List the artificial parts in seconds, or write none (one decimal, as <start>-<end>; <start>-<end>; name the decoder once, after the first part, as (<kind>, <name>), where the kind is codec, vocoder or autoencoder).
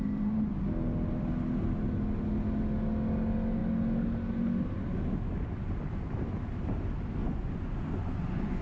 7.2-8.6 (vocoder, Vocos)